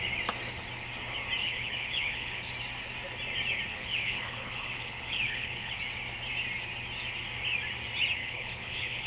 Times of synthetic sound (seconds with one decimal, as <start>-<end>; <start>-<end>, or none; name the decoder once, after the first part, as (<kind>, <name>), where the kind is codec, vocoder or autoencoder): 1.4-2.5 (codec, HILCodec); 3.7-5.8; 8.2-9.1